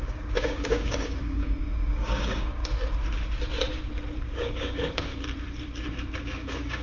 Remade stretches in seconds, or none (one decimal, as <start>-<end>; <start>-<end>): 0.0-2.6; 4.2-5.1; 6.2-6.8